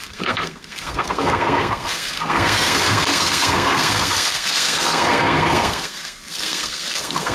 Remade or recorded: remade